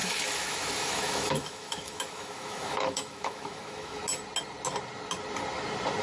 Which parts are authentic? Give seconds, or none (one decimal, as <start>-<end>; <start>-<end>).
4.0-6.0

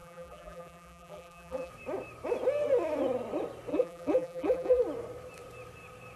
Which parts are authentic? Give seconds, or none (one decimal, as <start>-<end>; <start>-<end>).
1.7-3.7; 4.8-6.2

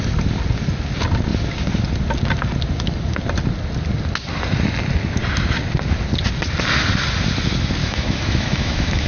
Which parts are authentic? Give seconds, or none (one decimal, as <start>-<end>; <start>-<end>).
0.0-7.8

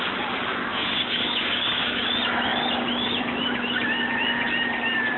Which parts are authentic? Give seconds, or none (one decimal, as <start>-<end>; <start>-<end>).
0.0-0.7; 2.0-5.2

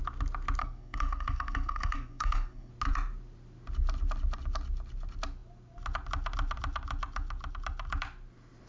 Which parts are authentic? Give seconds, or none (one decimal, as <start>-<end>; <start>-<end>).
0.0-0.6; 2.7-8.7

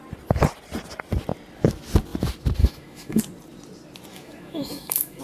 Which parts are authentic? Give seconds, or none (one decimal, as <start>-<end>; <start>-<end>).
0.0-2.6; 3.2-4.1